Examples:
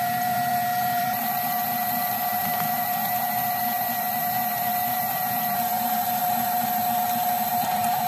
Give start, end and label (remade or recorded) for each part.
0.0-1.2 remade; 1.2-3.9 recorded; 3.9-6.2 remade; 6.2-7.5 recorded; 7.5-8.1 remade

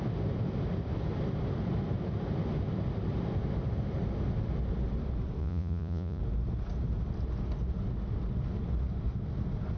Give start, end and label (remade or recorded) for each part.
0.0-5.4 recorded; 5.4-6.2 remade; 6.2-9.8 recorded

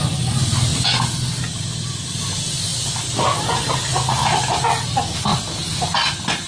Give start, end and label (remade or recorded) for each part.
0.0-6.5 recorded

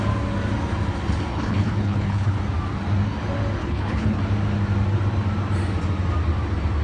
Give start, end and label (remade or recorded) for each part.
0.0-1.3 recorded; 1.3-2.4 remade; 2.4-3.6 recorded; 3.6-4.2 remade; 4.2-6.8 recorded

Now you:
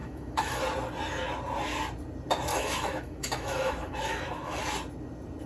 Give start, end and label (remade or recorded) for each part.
0.0-0.6 remade; 0.6-2.5 recorded; 2.5-4.6 remade; 4.6-5.5 recorded